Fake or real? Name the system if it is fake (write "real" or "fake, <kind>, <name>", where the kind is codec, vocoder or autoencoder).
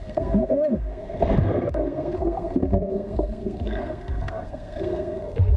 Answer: fake, codec, SNAC